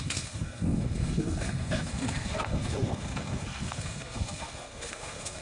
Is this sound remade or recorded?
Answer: remade